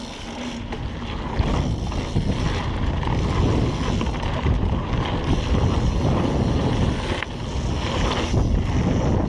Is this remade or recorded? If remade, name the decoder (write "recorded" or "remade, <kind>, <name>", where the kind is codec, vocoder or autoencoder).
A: recorded